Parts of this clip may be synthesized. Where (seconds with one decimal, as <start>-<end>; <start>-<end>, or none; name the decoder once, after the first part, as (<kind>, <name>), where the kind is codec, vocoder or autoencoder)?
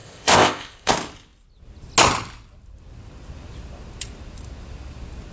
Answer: 0.0-0.9 (codec, ZipCodec)